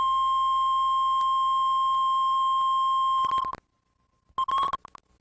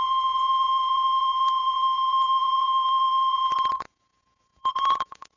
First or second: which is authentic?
first